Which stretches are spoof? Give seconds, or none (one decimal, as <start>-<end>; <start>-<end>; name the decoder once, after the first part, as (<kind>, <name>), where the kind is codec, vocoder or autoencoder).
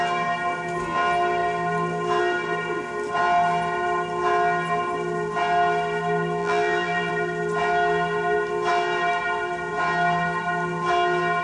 6.4-7.1 (vocoder, BigVGAN v2)